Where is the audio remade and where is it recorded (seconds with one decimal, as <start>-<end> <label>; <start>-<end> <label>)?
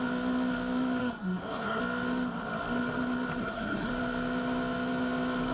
0.0-1.0 recorded; 1.0-1.8 remade; 1.8-3.4 recorded; 3.4-3.9 remade; 3.9-5.5 recorded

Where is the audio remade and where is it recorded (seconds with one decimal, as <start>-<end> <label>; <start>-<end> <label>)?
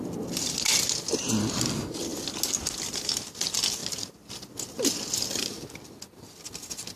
0.0-7.0 recorded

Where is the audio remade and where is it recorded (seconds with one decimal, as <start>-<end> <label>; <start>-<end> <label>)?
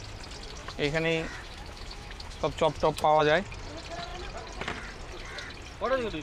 0.0-0.6 recorded; 0.6-3.2 remade; 3.2-6.2 recorded